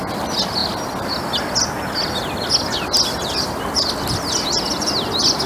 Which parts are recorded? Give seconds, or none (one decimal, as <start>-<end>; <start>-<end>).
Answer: 0.0-5.5

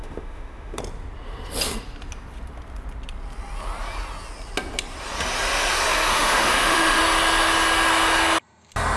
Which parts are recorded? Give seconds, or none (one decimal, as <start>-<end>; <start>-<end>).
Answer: 0.8-6.1; 7.0-9.0

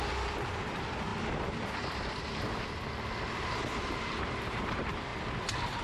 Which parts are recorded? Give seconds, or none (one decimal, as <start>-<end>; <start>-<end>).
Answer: 1.1-4.6; 5.1-5.8

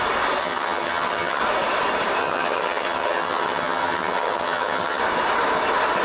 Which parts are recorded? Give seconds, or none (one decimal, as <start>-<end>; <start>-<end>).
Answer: 0.0-0.4; 1.4-2.2; 5.0-6.0